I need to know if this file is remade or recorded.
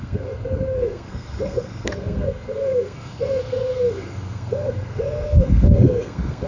remade